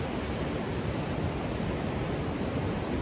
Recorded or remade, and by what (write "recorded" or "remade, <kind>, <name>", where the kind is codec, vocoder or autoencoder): recorded